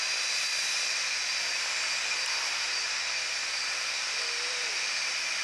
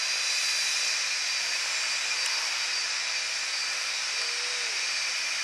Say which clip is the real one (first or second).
second